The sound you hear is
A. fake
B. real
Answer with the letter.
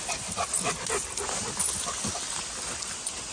B